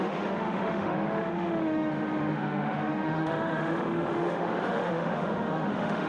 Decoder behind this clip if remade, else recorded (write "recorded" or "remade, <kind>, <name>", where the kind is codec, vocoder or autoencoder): remade, autoencoder, DAC-VAE